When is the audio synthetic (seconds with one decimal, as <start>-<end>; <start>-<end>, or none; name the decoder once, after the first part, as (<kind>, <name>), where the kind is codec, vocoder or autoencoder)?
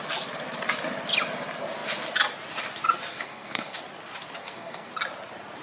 3.1-3.8 (codec, SNAC); 4.4-4.9